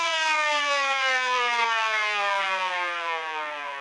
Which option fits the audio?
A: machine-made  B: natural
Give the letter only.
A